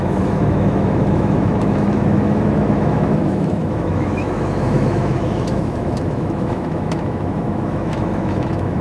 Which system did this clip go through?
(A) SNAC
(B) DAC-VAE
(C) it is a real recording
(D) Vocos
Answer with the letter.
B